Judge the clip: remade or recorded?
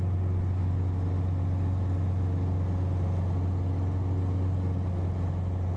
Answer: recorded